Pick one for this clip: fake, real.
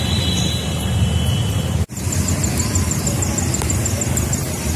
real